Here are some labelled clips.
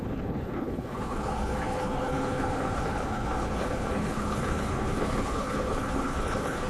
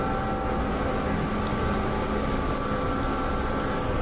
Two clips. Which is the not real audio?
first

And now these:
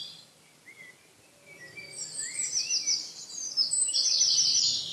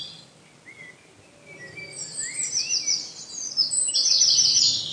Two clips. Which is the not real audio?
first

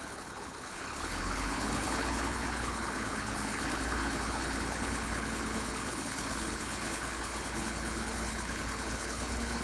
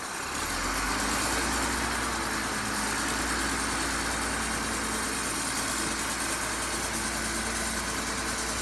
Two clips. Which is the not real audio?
first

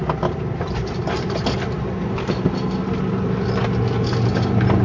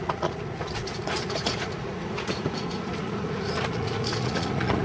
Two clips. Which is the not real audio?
second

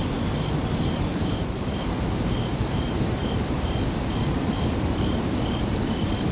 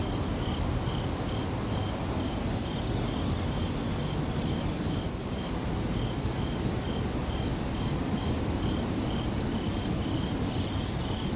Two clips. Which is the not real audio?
first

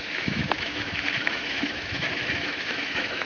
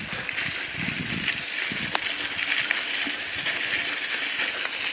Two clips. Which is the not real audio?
first